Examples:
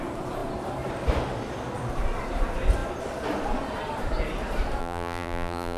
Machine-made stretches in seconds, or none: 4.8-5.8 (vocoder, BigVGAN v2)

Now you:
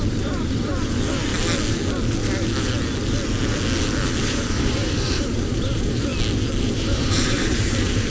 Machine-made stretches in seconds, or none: 0.0-0.7 (vocoder, BigVGAN v2); 4.2-6.1; 6.6-8.1

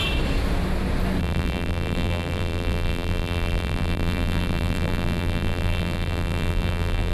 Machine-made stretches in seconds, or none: 1.2-7.1 (vocoder, BigVGAN v2)

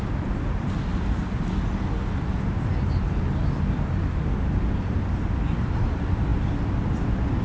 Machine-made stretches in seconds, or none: none

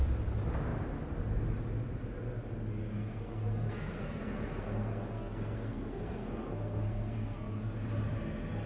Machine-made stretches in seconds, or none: 2.9-7.6 (codec, SNAC)

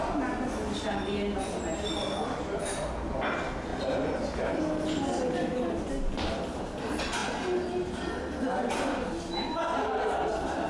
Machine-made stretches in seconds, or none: none